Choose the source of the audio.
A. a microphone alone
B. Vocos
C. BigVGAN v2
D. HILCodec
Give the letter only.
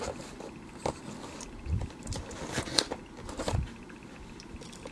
A